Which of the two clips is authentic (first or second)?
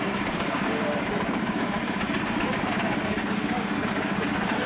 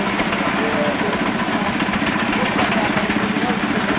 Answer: second